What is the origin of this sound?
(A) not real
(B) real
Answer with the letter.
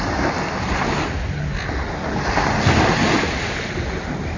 B